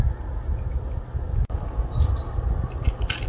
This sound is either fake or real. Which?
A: real